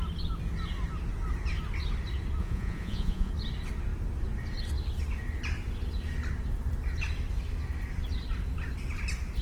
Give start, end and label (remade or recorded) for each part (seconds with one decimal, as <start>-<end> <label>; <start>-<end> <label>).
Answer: 0.0-2.4 recorded; 2.4-3.3 remade; 3.3-9.4 recorded